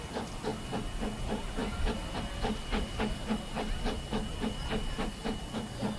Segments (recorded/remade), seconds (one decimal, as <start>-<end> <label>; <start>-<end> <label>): 0.0-6.0 recorded